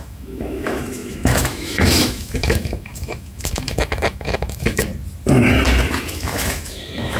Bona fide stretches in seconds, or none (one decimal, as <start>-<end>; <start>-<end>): 4.9-6.1